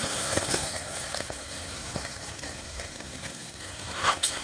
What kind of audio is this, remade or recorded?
remade